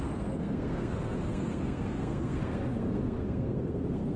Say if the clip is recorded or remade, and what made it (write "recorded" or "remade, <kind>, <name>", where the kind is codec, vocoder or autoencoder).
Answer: remade, codec, SNAC